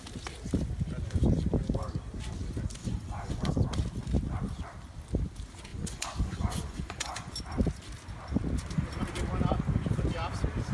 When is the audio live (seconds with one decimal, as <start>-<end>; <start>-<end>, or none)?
0.0-2.8; 3.5-5.7; 7.3-10.7